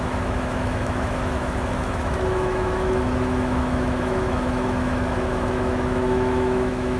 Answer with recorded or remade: remade